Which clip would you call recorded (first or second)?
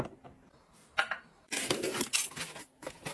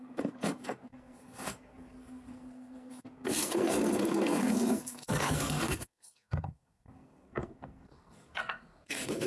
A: first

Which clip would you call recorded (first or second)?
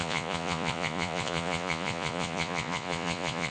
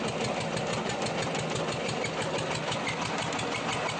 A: second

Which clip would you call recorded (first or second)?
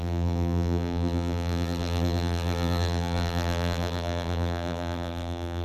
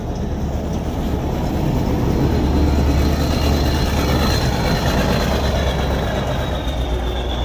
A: second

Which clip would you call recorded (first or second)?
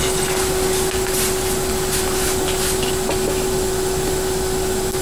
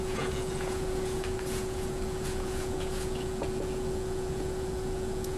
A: first